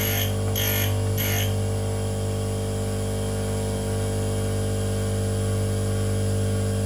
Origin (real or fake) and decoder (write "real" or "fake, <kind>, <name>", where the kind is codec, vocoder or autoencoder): real